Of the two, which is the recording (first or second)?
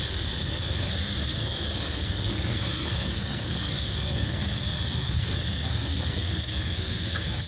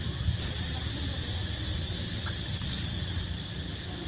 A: second